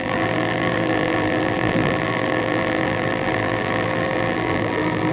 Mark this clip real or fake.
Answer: fake